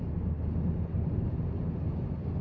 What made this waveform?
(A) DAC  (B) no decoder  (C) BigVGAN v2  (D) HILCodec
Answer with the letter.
B